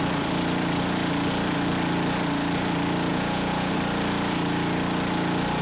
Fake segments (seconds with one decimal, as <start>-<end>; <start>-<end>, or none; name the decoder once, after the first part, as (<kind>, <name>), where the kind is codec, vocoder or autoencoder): 3.1-3.7 (vocoder, Vocos)